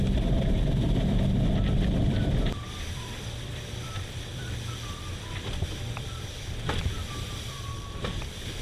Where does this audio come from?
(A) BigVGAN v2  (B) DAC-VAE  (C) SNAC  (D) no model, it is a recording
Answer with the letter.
A